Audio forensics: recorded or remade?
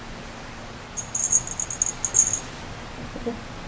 recorded